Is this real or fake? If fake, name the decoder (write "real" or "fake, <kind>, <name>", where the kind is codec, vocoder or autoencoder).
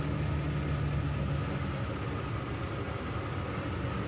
real